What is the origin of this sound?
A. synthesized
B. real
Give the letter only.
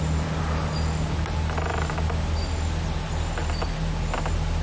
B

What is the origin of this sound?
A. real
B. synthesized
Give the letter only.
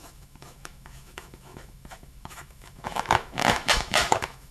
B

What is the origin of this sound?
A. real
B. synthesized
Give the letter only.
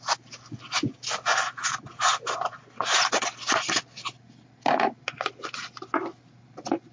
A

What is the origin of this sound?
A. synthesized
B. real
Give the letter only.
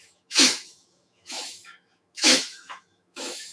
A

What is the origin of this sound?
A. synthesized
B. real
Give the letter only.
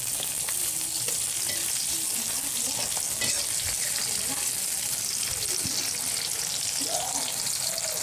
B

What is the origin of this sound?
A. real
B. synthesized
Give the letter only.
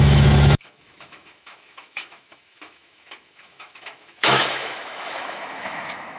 B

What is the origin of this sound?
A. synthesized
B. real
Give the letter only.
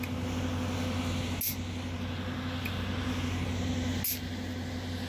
B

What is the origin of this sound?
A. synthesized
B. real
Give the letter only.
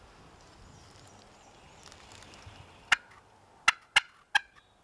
B